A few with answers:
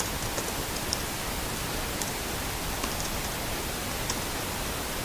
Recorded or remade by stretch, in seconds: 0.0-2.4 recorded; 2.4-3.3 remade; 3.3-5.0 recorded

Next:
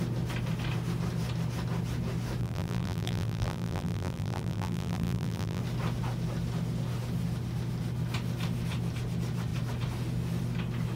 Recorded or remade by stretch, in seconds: 0.0-2.4 recorded; 2.4-5.6 remade; 5.6-11.0 recorded

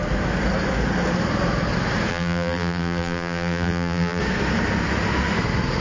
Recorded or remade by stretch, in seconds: 0.0-2.1 recorded; 2.1-4.2 remade; 4.2-5.8 recorded